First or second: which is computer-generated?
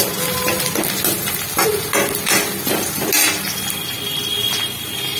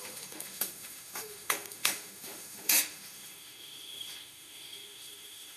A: second